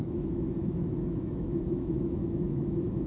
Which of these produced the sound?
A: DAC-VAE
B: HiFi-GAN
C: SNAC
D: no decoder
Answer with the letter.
A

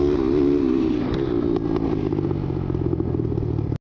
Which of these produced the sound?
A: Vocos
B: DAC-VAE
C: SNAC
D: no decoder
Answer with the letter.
D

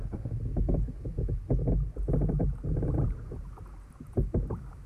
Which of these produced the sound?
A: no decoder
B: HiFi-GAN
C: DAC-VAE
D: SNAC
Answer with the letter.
A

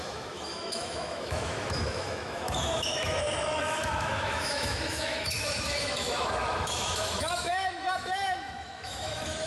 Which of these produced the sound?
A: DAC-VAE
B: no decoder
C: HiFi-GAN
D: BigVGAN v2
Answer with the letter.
A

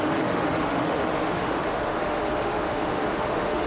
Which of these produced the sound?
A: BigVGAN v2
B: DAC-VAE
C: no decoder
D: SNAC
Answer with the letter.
B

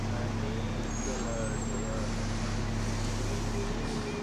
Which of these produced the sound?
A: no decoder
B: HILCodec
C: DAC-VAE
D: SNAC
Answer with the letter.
A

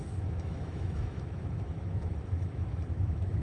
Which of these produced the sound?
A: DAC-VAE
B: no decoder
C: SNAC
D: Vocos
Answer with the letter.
A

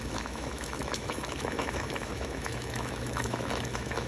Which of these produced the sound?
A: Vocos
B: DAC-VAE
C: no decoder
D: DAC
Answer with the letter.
B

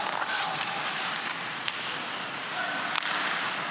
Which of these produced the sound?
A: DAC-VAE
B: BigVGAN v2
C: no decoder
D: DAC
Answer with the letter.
C